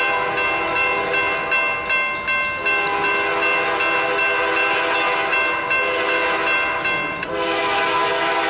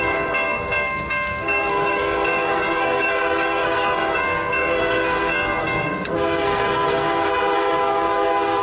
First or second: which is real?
first